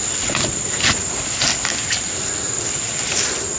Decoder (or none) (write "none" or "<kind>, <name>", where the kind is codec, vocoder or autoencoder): none